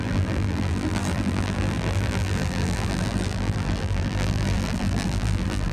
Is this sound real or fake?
fake